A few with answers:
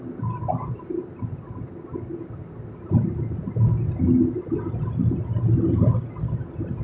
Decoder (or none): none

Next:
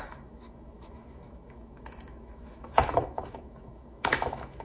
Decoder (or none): autoencoder, DAC-VAE